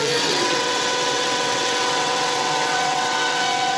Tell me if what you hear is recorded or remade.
remade